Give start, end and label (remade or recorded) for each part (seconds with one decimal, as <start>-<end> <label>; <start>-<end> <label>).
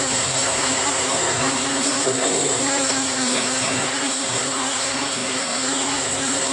0.0-6.5 remade